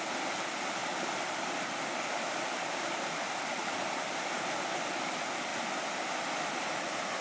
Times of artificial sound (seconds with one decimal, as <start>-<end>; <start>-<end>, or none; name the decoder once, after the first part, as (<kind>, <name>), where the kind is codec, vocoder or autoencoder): none